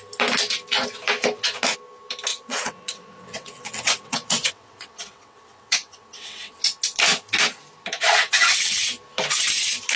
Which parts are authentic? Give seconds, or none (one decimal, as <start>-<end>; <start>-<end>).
0.0-2.3; 6.6-8.2; 8.8-10.0